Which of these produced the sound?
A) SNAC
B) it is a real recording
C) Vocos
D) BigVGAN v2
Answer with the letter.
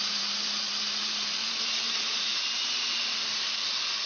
D